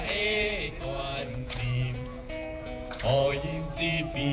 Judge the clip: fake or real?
fake